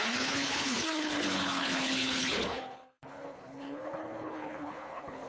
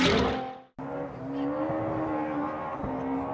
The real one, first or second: second